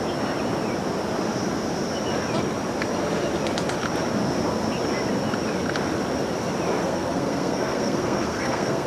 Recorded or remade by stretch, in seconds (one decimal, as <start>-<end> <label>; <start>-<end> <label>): 0.0-6.8 recorded; 6.8-8.9 remade